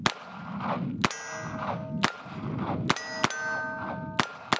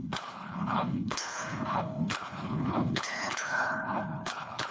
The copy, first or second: second